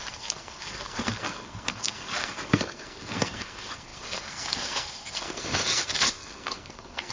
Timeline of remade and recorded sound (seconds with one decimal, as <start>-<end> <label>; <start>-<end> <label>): 0.0-7.1 remade